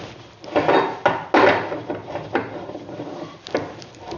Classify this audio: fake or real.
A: real